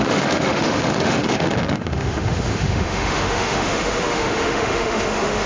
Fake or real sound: fake